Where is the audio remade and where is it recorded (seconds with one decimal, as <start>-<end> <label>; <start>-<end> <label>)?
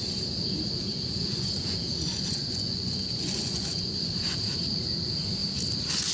0.0-0.9 recorded; 0.9-4.1 remade; 4.1-6.1 recorded